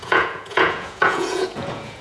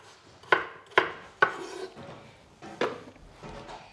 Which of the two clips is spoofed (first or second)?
first